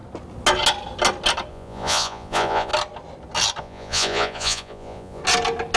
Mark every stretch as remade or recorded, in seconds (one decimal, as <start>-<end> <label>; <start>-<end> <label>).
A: 0.0-1.5 recorded; 1.5-2.7 remade; 2.7-3.6 recorded; 3.6-5.2 remade; 5.2-5.8 recorded